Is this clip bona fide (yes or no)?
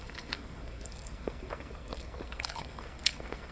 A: no